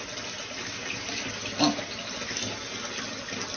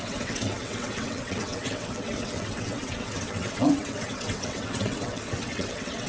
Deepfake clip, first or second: second